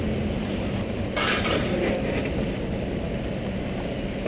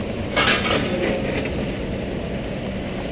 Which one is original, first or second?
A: second